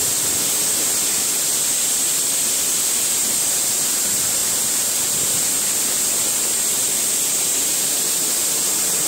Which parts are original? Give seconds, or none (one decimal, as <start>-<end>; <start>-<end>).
0.0-9.1